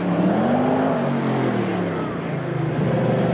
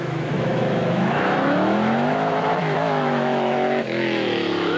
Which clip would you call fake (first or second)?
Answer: second